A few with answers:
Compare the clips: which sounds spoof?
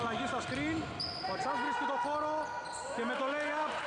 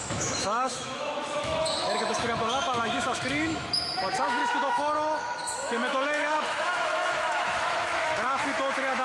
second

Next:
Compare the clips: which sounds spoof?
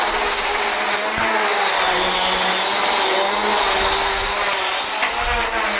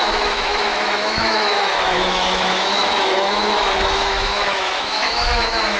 second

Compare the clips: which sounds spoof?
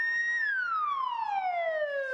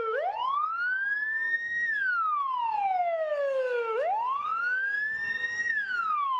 second